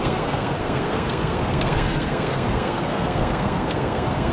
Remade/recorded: remade